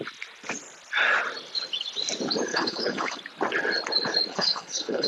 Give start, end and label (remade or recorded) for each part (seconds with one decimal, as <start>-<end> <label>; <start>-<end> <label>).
0.0-2.5 recorded; 2.5-3.2 remade; 3.2-4.3 recorded; 4.3-5.1 remade